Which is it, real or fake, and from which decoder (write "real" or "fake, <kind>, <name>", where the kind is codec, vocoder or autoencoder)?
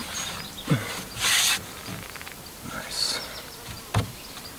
fake, vocoder, BigVGAN v2